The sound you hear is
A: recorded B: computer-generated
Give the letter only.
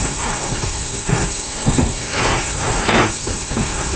B